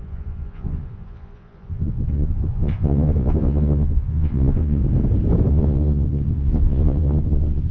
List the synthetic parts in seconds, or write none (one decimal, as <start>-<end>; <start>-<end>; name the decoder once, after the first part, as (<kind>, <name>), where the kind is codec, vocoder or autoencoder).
0.0-4.8 (vocoder, Vocos); 5.5-7.7